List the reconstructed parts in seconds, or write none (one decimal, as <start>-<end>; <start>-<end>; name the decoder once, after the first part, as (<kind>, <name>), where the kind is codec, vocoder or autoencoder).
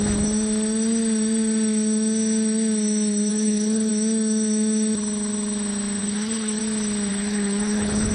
3.3-3.9 (codec, HILCodec); 6.0-6.6; 7.1-8.1